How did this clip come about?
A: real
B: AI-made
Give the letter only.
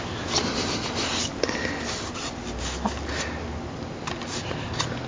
A